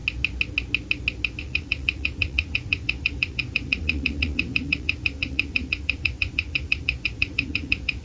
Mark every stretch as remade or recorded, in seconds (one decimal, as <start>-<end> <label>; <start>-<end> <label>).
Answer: 0.0-1.4 recorded; 1.4-8.0 remade